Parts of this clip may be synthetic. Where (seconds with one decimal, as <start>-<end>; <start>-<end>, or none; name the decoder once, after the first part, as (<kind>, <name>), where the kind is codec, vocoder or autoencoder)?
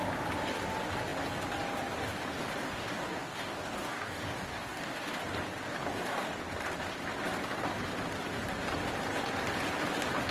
2.6-5.2 (codec, DAC); 5.7-6.3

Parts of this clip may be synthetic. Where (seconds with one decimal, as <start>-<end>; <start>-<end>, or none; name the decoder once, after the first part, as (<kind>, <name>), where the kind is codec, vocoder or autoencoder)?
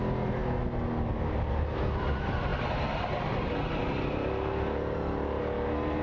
none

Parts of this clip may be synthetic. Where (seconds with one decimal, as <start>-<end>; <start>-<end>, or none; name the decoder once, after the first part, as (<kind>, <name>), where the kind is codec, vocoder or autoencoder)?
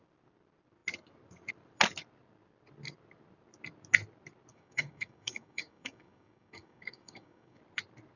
4.5-7.6 (codec, DAC)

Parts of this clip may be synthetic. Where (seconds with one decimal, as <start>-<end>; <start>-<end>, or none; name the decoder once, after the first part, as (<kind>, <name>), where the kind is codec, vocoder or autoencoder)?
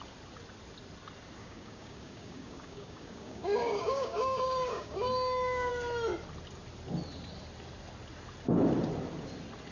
1.4-5.7 (codec, DAC)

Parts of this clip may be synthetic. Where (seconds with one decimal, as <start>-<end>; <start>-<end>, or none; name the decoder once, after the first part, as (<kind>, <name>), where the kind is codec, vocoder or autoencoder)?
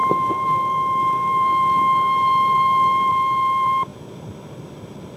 0.0-3.1 (codec, DAC)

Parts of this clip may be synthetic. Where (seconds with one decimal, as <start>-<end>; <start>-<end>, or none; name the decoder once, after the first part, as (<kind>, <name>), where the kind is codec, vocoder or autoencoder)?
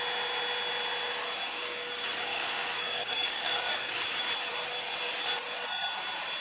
2.3-4.0 (codec, DAC)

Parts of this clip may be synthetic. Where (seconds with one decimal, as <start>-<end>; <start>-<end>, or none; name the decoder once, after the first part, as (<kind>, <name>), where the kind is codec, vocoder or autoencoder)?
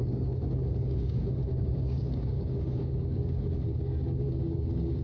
0.0-5.0 (codec, DAC)